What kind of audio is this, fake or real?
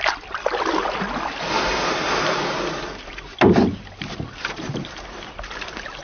fake